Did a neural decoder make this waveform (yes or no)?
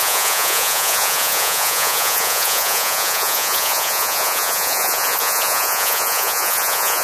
yes